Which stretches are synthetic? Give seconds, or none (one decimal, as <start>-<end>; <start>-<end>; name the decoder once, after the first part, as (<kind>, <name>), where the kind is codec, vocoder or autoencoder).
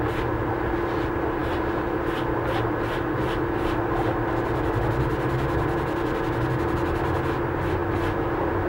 none